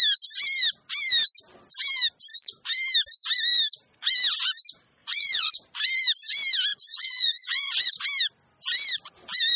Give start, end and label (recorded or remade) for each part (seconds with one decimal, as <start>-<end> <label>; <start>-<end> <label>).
0.0-5.0 recorded; 5.0-5.7 remade; 5.7-6.7 recorded; 6.7-7.9 remade; 7.9-9.6 recorded